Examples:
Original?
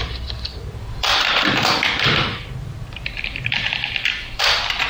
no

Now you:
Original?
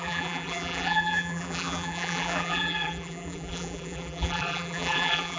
no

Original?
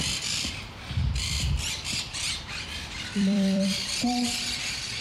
no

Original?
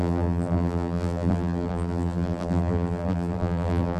no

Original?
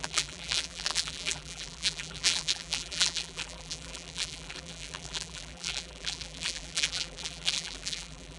no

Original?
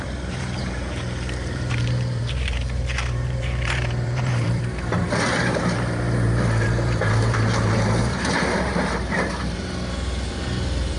no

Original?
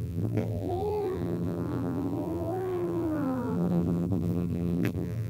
no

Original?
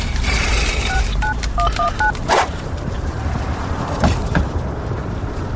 no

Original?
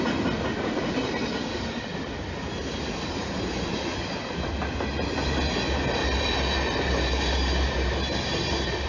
yes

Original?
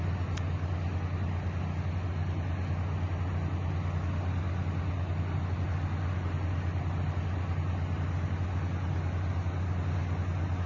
yes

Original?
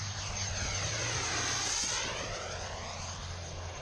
yes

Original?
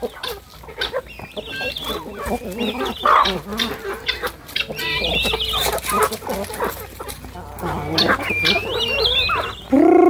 yes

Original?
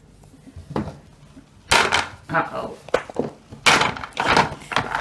yes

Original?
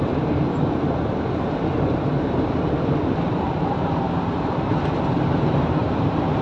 no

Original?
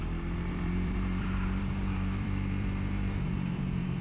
no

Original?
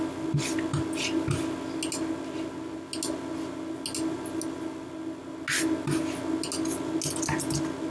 yes